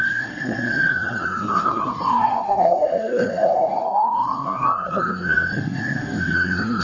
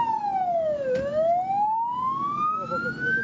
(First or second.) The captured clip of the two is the second